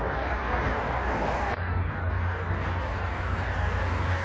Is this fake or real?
fake